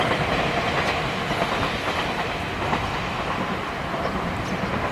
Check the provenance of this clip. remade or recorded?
recorded